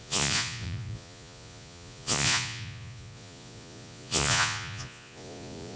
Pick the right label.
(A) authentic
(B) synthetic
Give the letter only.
B